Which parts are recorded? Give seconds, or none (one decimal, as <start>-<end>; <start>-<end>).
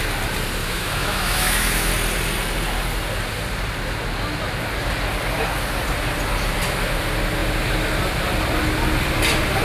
0.0-0.6; 1.9-9.6